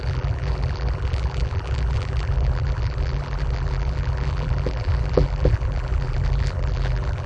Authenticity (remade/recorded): remade